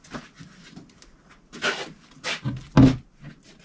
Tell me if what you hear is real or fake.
real